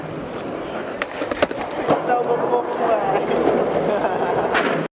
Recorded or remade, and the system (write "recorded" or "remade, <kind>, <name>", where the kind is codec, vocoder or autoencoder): recorded